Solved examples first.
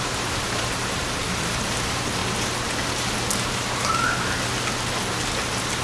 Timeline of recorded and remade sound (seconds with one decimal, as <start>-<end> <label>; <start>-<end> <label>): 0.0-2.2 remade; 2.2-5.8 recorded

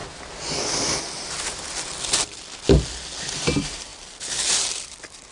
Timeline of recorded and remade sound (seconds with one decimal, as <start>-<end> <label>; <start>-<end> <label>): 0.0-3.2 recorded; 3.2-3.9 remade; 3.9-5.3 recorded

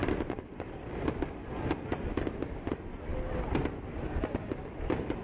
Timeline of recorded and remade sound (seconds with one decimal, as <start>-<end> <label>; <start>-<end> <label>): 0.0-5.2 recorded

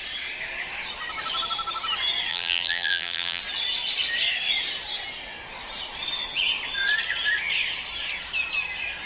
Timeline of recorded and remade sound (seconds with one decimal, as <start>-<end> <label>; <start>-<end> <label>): 0.0-2.3 recorded; 2.3-3.4 remade; 3.4-9.1 recorded